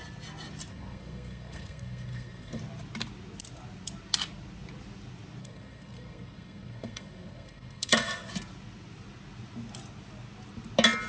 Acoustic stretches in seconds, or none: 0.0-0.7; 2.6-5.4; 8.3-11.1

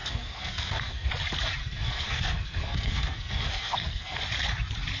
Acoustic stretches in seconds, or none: 1.1-1.6; 4.2-5.0